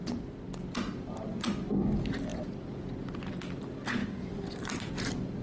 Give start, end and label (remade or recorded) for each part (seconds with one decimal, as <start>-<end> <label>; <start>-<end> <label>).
0.0-4.0 recorded; 4.0-4.9 remade; 4.9-5.4 recorded